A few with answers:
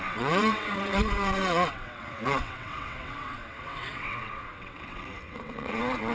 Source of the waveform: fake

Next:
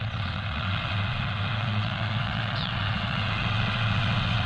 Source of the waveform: fake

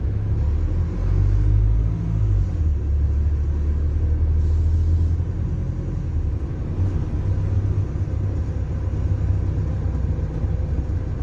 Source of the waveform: real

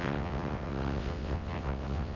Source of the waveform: fake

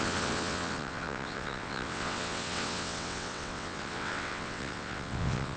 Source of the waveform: fake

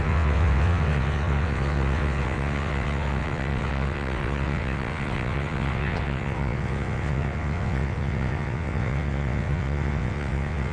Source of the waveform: fake